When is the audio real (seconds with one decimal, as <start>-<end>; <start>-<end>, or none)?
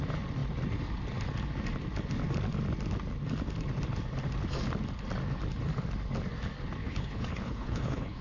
0.0-6.8